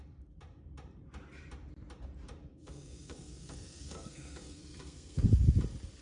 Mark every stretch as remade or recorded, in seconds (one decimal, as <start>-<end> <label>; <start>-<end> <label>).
0.0-2.5 recorded; 2.5-5.3 remade; 5.3-6.0 recorded